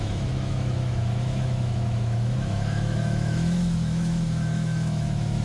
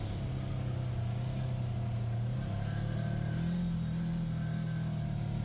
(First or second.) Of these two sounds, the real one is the second